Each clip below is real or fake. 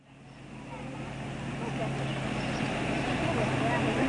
real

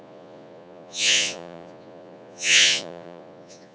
fake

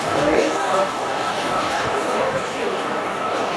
fake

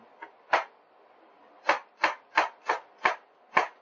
real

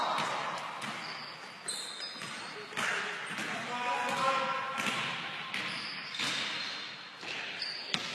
real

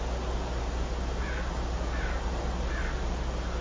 real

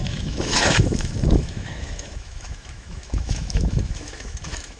fake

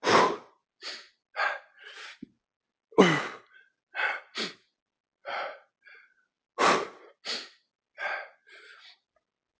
real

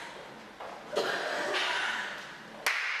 real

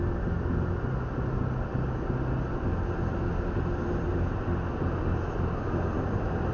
real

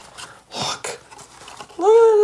real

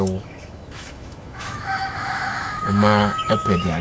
fake